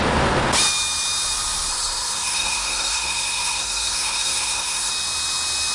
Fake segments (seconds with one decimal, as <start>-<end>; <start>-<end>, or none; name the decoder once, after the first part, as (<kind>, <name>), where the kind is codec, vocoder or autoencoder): 1.7-4.9 (codec, SNAC)